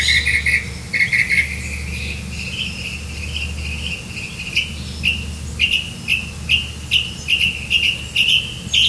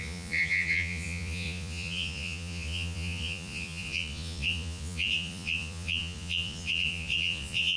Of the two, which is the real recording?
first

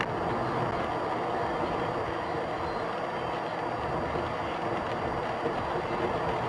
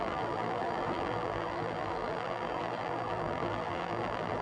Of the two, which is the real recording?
first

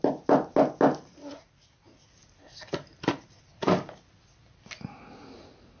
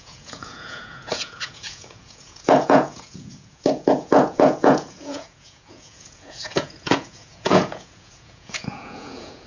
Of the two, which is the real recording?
first